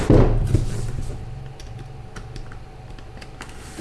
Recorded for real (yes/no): yes